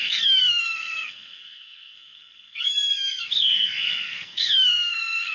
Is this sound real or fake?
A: fake